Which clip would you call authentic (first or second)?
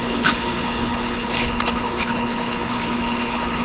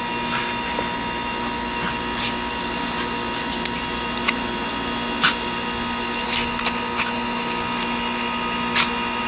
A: second